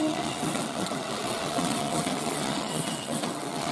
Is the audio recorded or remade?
remade